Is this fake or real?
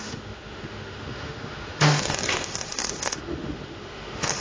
fake